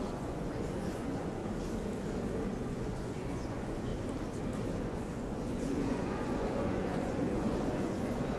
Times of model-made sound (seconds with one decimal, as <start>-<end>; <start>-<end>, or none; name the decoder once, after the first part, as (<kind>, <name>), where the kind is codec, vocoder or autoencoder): 0.0-1.4 (vocoder, Vocos); 2.6-3.9; 4.8-8.4